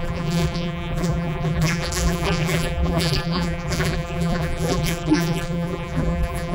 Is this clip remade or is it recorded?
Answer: remade